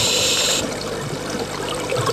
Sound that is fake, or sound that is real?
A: fake